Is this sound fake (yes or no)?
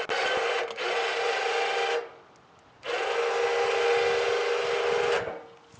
no